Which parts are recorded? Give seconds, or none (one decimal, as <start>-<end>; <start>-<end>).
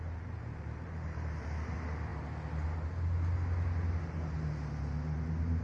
2.1-5.6